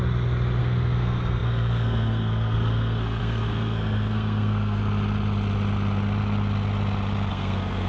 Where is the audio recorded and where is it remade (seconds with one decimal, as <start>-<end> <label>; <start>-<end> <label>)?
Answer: 0.0-0.6 recorded; 0.6-4.8 remade; 4.8-7.3 recorded; 7.3-7.9 remade